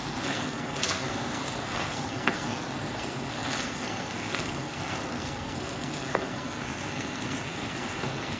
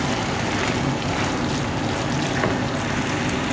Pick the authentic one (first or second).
second